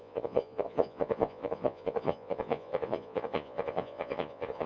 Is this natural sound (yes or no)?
no